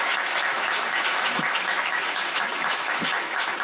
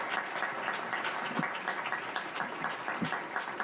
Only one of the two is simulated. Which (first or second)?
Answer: first